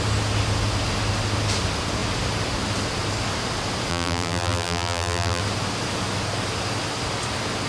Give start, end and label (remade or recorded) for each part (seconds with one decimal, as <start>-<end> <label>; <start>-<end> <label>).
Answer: 0.0-3.9 recorded; 3.9-5.4 remade; 5.4-7.7 recorded